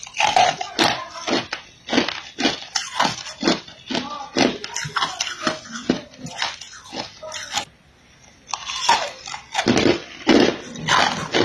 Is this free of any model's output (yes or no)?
yes